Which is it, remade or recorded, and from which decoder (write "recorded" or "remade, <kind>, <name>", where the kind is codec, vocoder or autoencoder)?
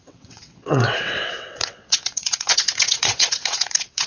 remade, vocoder, WaveNeXt